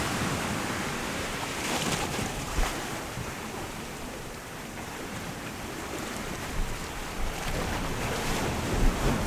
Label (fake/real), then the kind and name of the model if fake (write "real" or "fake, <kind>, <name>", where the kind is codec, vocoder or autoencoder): fake, vocoder, BigVGAN v2